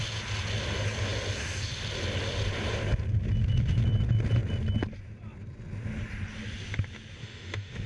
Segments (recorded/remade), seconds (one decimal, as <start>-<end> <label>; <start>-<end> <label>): 0.0-7.2 recorded; 7.2-7.9 remade